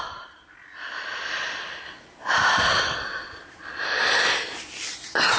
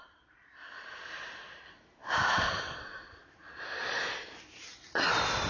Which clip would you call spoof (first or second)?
second